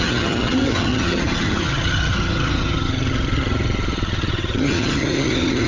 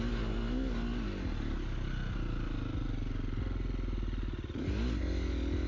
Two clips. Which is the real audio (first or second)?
second